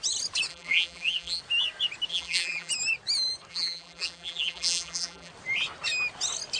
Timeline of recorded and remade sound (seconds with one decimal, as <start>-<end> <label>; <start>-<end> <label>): 0.0-0.5 recorded; 0.5-1.4 remade; 1.4-2.1 recorded; 2.1-2.7 remade; 2.7-3.5 recorded; 3.5-5.3 remade; 5.3-6.6 recorded